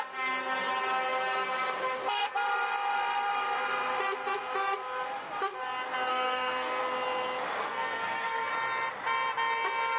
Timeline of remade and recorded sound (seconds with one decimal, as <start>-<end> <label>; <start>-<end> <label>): 0.0-6.1 recorded; 6.1-6.8 remade; 6.8-7.6 recorded; 7.6-8.5 remade; 8.5-10.0 recorded